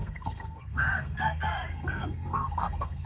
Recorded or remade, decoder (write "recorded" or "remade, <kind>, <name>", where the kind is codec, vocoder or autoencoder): remade, codec, SNAC